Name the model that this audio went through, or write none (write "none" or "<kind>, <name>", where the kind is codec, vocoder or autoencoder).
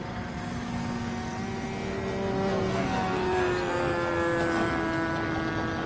none